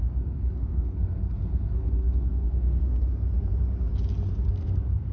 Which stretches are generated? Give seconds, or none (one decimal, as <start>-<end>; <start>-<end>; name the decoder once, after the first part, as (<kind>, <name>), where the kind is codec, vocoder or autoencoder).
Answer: 0.0-3.2 (codec, SNAC); 4.5-5.1

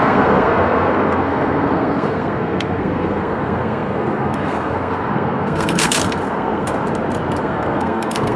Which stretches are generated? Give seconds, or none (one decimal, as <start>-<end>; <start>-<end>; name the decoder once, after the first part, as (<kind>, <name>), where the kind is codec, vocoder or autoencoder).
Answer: 0.0-6.8 (codec, SNAC); 7.4-8.4

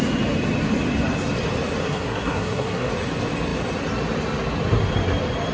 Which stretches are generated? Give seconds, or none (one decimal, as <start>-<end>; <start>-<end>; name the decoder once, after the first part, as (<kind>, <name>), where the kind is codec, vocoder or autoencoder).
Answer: 1.8-2.9 (codec, SNAC)

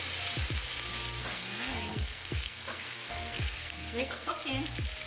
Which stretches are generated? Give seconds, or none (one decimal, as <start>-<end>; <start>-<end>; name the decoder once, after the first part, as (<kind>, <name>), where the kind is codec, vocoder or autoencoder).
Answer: 1.2-4.3 (codec, SNAC)

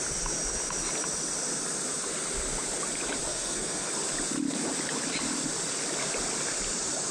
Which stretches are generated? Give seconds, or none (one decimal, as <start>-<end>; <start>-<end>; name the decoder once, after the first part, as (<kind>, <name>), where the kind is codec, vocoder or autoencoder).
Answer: 3.3-3.9 (codec, SNAC)

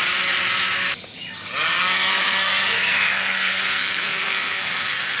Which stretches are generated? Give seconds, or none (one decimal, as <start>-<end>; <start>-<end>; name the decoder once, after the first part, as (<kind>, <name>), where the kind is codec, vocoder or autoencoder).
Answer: 1.8-5.2 (codec, SNAC)

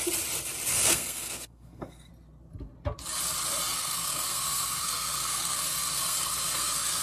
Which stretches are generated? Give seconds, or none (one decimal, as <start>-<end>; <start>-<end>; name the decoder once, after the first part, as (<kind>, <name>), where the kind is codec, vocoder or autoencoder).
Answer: 0.7-2.1 (codec, SNAC); 3.7-7.0